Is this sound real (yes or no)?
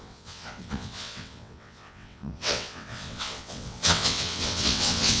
no